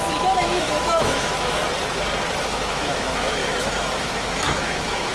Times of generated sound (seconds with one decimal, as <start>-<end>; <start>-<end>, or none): 0.0-1.6; 2.4-5.1